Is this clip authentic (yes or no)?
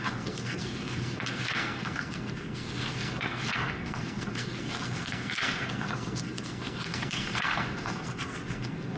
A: no